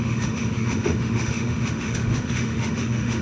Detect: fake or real fake